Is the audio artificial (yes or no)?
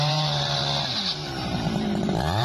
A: yes